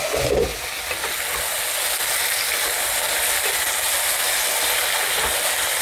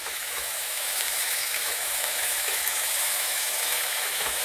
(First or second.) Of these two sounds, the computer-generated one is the second